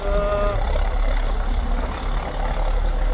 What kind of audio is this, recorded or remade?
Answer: recorded